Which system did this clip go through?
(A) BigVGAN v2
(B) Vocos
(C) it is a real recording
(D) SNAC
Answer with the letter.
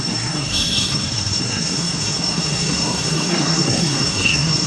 D